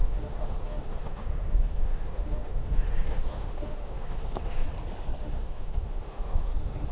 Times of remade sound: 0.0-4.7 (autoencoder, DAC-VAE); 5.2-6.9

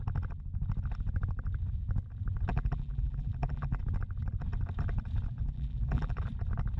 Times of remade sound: 2.5-3.8 (vocoder, BigVGAN v2); 5.4-6.2

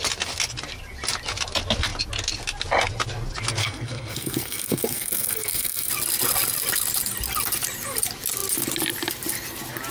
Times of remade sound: 3.6-5.9 (codec, SNAC)

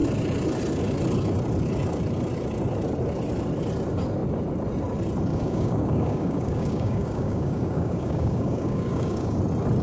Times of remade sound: 5.3-9.4 (codec, DAC)

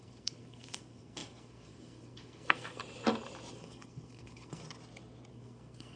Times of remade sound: 0.0-2.8 (codec, SNAC); 3.5-4.6; 5.3-6.0

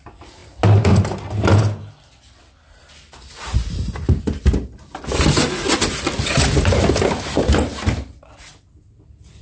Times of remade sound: none